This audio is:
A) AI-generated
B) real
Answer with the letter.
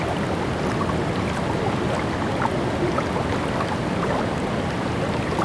B